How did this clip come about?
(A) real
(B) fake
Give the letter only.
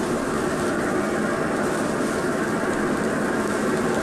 A